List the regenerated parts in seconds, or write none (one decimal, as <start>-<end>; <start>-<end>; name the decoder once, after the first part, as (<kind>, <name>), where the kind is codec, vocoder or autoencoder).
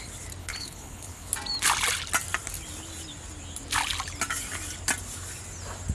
0.4-1.3 (codec, HILCodec)